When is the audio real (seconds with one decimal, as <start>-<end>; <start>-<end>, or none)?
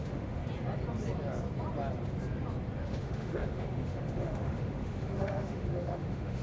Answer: 0.4-2.8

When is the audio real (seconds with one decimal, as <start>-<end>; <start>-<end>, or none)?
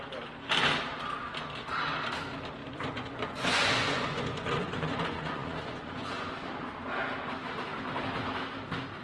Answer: 0.0-2.6; 6.3-9.0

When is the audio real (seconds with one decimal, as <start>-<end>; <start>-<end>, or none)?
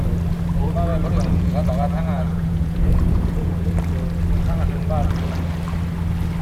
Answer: 0.0-0.9; 3.7-6.4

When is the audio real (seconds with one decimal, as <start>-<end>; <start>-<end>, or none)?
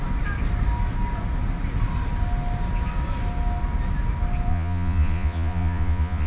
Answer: 0.0-4.5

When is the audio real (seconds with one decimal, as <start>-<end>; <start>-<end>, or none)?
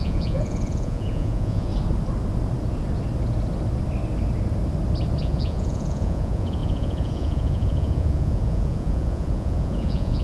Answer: 1.7-5.2